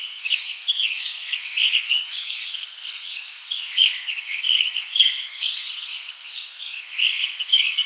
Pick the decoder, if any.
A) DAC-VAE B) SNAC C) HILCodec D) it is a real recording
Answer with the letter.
B